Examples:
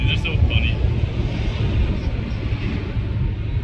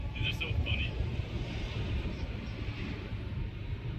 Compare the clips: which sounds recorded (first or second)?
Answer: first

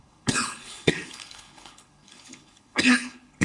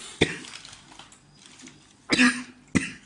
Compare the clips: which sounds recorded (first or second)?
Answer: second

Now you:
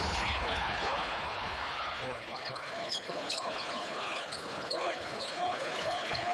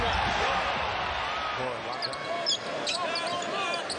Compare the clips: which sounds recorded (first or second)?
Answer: second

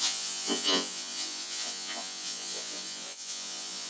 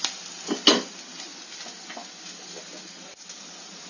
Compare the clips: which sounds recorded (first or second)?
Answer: second